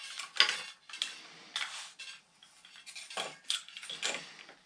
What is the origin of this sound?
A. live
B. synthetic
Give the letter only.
A